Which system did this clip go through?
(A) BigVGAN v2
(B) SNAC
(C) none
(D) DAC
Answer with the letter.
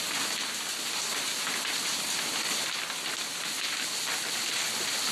C